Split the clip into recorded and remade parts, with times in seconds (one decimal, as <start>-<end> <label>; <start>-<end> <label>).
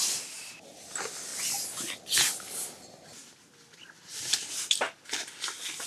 0.0-5.9 recorded